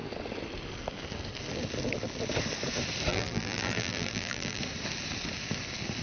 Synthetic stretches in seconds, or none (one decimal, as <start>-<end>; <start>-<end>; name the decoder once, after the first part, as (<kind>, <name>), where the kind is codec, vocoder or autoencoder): 3.1-4.6 (vocoder, BigVGAN v2)